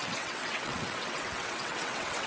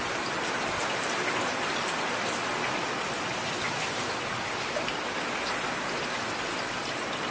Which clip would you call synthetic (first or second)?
first